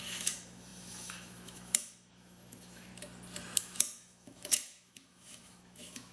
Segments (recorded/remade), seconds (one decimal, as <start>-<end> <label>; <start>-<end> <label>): 0.0-2.9 remade; 2.9-3.6 recorded; 3.6-6.1 remade